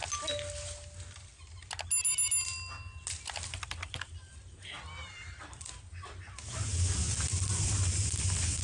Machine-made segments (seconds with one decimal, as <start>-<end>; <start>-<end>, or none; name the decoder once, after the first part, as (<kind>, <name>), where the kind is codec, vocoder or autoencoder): none